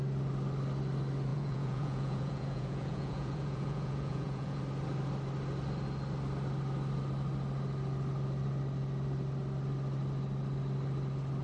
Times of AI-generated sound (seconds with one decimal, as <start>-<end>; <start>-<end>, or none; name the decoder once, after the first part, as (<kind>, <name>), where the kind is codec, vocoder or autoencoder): 1.3-4.6 (vocoder, Vocos)